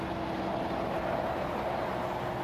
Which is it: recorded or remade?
recorded